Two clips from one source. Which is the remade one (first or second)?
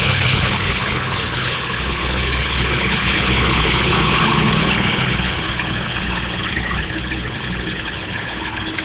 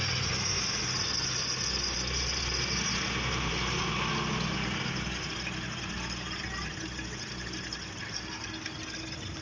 first